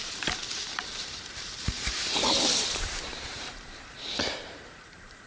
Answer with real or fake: fake